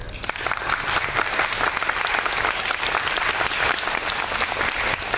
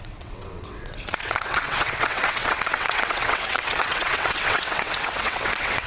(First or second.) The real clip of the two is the first